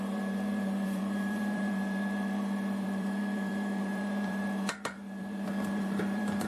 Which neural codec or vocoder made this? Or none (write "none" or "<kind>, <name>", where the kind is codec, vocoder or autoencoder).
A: vocoder, BigVGAN v2